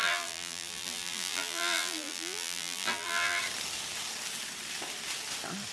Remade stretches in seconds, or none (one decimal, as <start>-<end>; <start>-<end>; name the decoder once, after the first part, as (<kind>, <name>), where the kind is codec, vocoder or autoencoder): 0.0-3.4 (vocoder, BigVGAN v2)